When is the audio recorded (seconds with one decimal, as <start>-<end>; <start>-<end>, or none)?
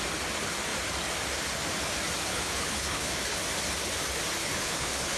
0.0-2.3; 3.4-4.4